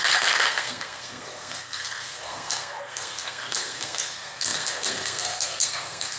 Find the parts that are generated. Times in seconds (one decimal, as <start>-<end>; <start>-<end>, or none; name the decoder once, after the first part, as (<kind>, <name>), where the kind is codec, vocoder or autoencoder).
0.0-6.2 (codec, SNAC)